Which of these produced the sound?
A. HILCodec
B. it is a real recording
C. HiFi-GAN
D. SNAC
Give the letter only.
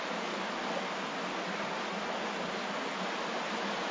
B